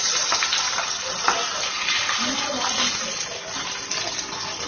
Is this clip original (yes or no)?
yes